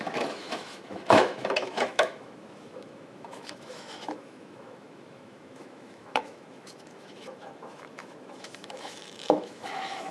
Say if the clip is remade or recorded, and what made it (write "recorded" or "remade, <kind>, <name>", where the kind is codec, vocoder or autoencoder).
remade, autoencoder, DAC-VAE